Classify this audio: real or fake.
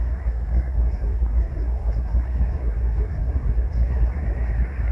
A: fake